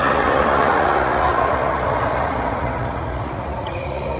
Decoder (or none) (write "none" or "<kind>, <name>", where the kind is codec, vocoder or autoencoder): vocoder, Vocos